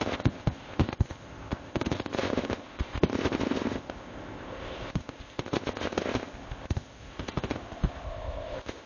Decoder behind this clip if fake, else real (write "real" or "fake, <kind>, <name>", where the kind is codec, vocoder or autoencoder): fake, codec, ZipCodec